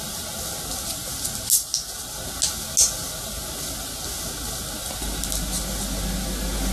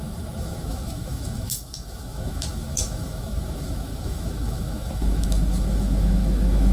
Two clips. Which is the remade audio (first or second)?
second